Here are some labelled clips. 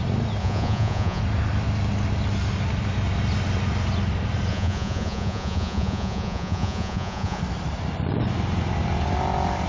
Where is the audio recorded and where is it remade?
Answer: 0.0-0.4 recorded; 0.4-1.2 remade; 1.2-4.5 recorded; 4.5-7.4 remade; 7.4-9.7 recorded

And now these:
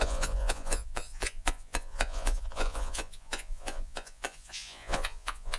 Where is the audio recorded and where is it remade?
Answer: 0.0-5.6 remade

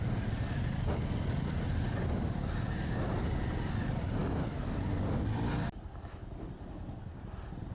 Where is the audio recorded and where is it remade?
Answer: 0.0-7.7 recorded

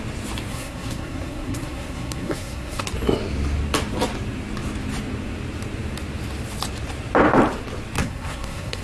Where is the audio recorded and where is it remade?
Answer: 0.0-0.5 recorded; 0.5-2.8 remade; 2.8-8.0 recorded; 8.0-8.8 remade

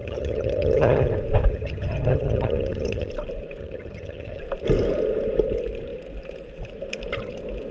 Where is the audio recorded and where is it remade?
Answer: 0.0-1.1 remade; 1.1-1.5 recorded; 1.5-3.1 remade; 3.1-3.6 recorded; 3.6-4.4 remade; 4.4-7.7 recorded

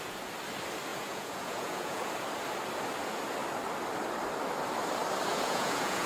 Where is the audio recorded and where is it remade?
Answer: 0.0-0.9 recorded; 0.9-2.1 remade; 2.1-5.3 recorded; 5.3-6.1 remade